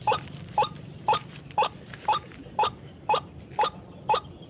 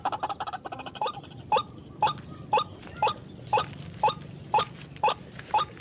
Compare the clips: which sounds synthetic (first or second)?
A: first